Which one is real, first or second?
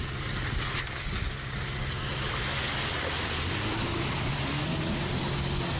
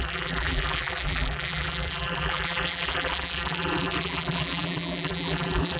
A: first